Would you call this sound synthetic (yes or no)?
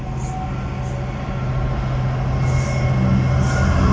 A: no